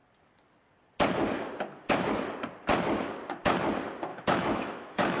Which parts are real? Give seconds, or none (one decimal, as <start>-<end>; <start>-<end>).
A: 0.0-4.1